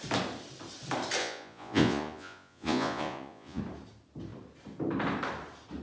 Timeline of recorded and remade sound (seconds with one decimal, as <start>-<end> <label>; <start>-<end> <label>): 0.0-1.2 recorded; 1.2-3.6 remade; 3.6-5.8 recorded